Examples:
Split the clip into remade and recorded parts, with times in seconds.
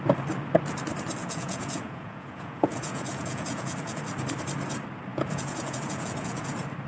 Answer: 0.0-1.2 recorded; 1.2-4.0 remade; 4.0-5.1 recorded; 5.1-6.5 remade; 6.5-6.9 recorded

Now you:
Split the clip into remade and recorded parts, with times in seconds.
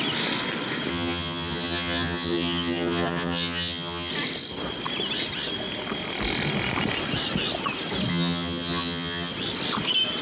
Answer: 0.0-0.9 recorded; 0.9-4.1 remade; 4.1-8.1 recorded; 8.1-9.3 remade; 9.3-10.2 recorded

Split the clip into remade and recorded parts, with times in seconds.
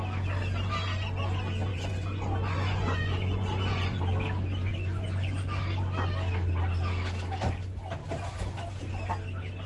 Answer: 0.0-1.7 recorded; 1.7-4.0 remade; 4.0-4.7 recorded; 4.7-5.4 remade; 5.4-9.7 recorded